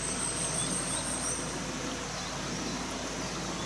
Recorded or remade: recorded